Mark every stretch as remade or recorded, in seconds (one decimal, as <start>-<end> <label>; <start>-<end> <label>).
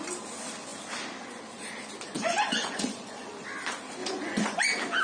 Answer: 0.0-2.1 recorded; 2.1-3.3 remade; 3.3-4.0 recorded; 4.0-4.6 remade; 4.6-5.0 recorded